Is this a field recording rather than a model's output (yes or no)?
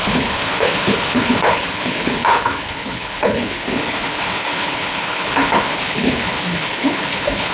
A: no